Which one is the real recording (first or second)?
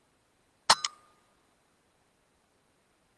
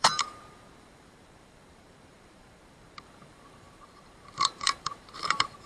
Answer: first